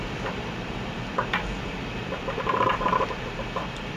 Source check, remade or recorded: remade